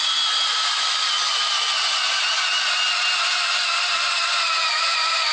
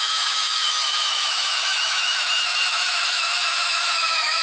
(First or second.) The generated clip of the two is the second